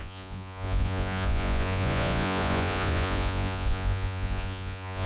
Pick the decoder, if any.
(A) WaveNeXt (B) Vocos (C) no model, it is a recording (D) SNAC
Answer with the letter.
B